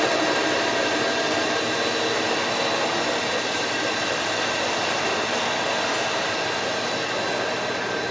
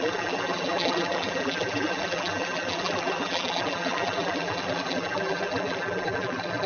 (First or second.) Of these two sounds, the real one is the first